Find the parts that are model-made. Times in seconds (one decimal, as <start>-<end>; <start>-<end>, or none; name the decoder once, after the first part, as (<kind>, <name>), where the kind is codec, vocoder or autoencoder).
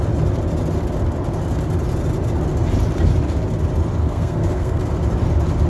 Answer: 4.0-4.8 (codec, SNAC)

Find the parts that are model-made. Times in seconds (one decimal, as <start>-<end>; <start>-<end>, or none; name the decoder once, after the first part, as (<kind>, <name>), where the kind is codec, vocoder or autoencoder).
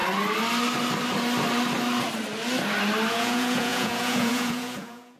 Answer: 3.1-5.2 (vocoder, Vocos)